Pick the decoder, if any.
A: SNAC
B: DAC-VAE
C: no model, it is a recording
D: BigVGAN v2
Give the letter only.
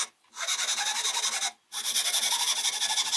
C